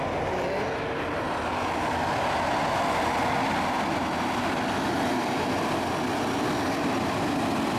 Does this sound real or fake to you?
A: real